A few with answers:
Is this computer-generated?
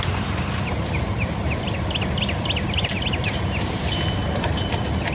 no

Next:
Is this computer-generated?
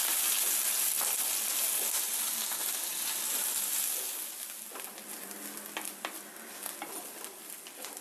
no